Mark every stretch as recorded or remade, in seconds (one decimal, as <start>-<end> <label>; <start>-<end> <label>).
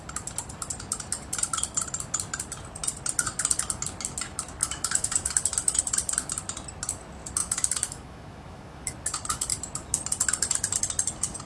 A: 0.0-4.6 recorded; 4.6-5.8 remade; 5.8-7.4 recorded; 7.4-8.9 remade; 8.9-11.5 recorded